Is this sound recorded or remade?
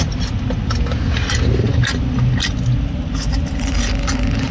recorded